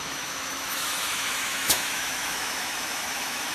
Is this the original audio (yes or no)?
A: no